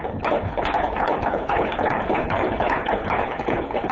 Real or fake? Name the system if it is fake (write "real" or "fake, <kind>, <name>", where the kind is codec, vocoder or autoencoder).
fake, codec, HILCodec